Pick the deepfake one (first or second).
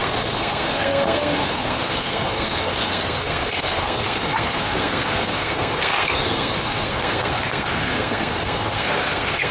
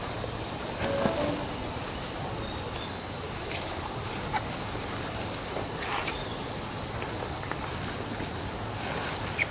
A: first